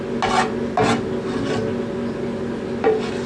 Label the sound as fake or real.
real